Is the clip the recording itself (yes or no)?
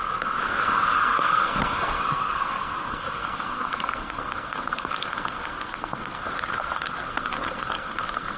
no